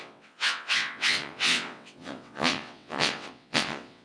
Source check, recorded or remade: remade